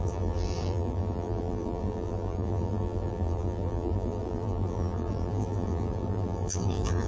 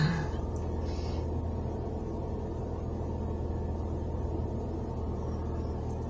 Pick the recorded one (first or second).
second